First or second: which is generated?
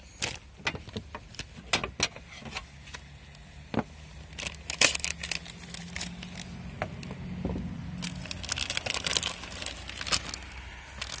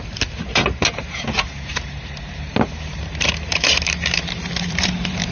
second